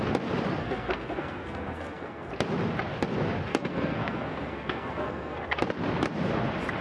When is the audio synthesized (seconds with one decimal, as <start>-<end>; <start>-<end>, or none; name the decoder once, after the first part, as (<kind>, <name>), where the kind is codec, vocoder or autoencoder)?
0.6-2.3 (codec, SNAC); 3.5-5.6